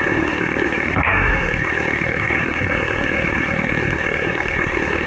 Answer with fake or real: fake